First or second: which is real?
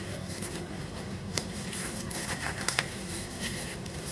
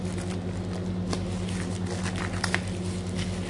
second